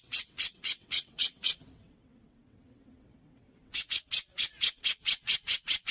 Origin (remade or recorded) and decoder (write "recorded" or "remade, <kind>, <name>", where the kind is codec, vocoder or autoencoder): remade, vocoder, WaveNeXt